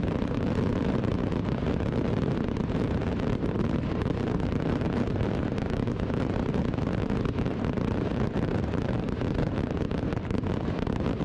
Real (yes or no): no